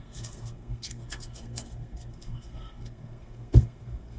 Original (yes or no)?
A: no